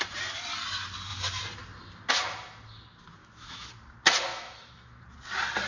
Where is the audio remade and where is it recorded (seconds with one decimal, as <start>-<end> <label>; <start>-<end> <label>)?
0.0-3.2 recorded; 3.2-3.7 remade; 3.7-4.3 recorded; 4.3-5.0 remade; 5.0-5.7 recorded